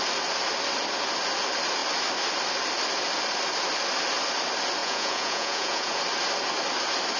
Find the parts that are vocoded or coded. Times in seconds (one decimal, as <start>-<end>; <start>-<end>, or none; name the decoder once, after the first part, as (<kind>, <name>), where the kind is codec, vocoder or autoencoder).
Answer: 4.8-6.0 (vocoder, Vocos)